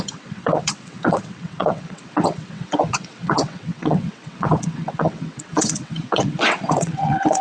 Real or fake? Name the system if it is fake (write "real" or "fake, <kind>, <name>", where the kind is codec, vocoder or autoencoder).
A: fake, vocoder, WaveNeXt